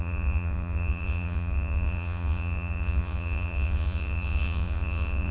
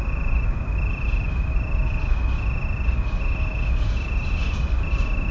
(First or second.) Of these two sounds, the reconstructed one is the first